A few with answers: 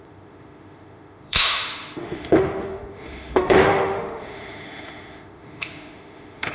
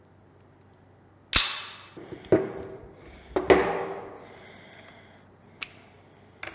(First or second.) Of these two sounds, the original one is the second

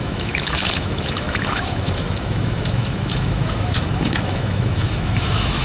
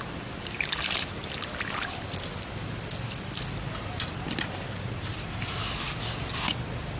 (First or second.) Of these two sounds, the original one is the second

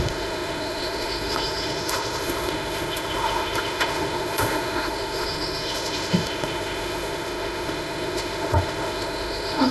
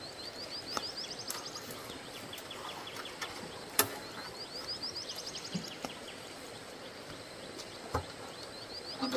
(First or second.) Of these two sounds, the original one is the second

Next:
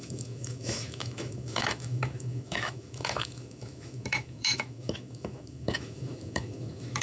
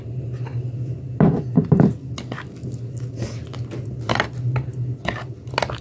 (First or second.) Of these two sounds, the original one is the second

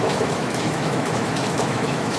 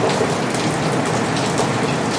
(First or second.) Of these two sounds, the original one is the second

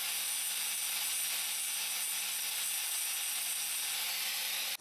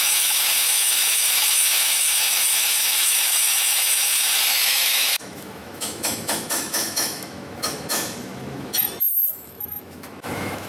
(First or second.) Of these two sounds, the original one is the first